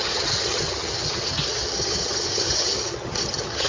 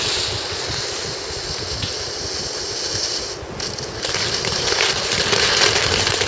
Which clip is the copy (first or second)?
first